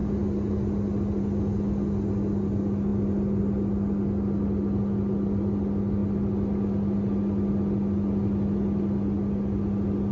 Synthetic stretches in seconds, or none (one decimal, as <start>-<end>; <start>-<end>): none